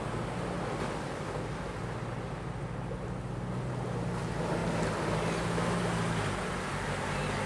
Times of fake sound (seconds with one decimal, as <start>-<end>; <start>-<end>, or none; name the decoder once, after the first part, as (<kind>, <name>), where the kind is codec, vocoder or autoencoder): none